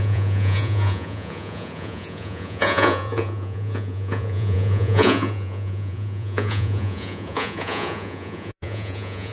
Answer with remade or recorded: remade